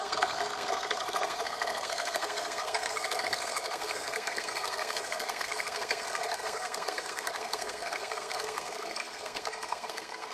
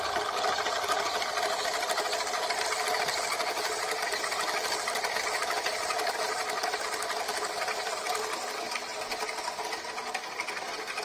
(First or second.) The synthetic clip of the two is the first